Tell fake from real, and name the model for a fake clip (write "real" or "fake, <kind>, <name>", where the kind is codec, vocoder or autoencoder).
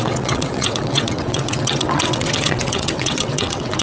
fake, vocoder, WaveNeXt